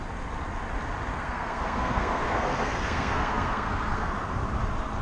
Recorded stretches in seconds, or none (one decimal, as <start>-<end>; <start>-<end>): 0.0-1.1; 4.1-5.0